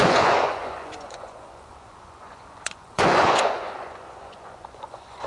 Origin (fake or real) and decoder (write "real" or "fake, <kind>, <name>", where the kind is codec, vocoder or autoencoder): fake, vocoder, Vocos